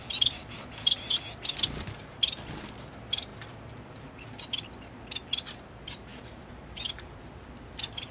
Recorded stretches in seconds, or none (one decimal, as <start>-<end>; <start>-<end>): 0.0-6.1; 7.5-8.1